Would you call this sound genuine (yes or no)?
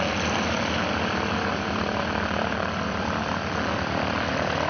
yes